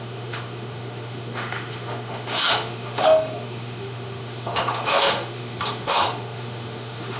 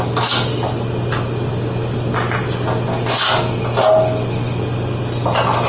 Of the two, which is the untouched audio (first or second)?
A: second